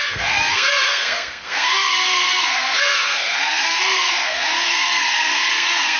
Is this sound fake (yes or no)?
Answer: yes